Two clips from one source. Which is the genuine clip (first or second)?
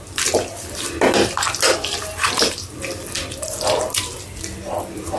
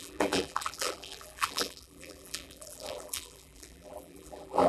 first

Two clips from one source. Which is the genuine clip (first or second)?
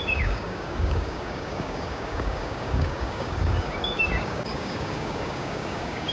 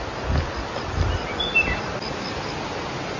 second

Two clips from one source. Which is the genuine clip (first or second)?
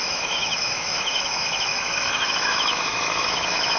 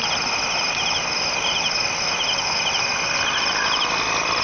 second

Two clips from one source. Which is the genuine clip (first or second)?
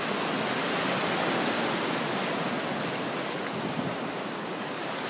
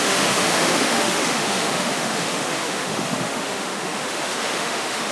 first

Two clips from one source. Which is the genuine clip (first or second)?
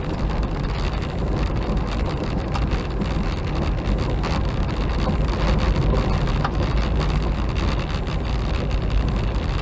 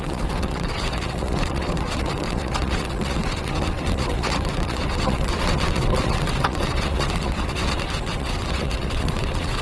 first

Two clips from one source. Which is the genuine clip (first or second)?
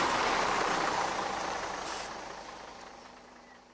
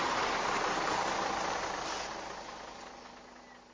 second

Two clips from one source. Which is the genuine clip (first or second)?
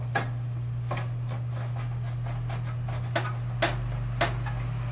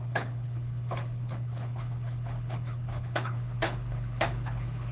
first